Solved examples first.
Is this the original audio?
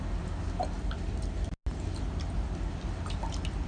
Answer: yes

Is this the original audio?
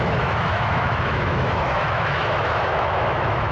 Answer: no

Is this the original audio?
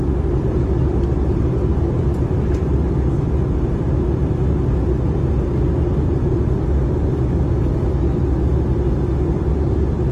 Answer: yes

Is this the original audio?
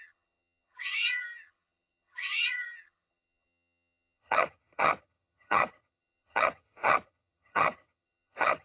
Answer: no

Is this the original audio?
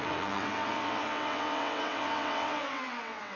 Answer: no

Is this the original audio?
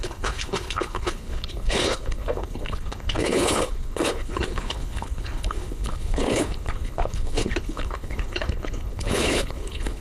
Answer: no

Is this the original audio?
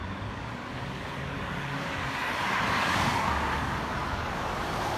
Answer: no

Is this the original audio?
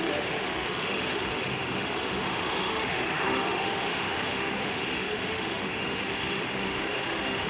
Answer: no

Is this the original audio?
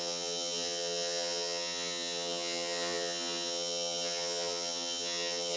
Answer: no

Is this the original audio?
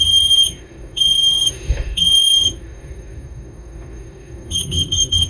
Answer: no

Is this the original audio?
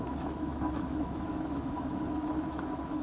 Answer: no